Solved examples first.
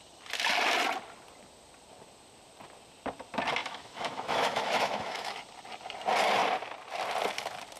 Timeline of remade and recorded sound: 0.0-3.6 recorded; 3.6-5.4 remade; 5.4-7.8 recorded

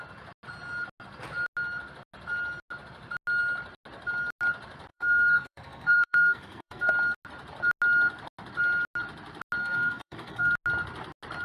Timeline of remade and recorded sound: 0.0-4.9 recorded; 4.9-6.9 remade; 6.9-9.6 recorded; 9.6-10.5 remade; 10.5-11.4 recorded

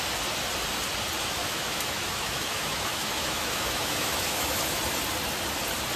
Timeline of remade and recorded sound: 0.0-1.4 recorded; 1.4-4.6 remade; 4.6-6.0 recorded

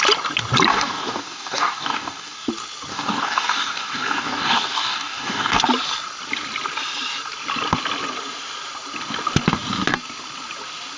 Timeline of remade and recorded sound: 0.0-0.7 recorded; 0.7-2.5 remade; 2.5-2.9 recorded; 2.9-5.6 remade; 5.6-11.0 recorded

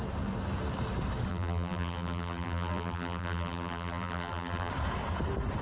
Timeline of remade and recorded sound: 0.0-1.3 recorded; 1.3-4.7 remade; 4.7-5.6 recorded

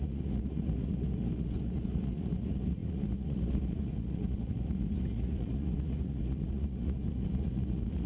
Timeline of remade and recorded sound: 0.0-8.1 remade

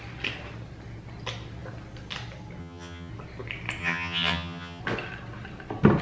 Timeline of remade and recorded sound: 0.0-2.6 recorded; 2.6-3.1 remade; 3.1-3.8 recorded; 3.8-4.8 remade; 4.8-6.0 recorded